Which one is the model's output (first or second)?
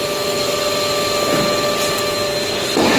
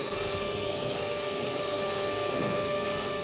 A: second